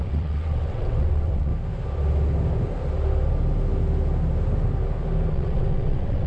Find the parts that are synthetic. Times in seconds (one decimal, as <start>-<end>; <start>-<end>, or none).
0.0-1.5; 5.3-6.3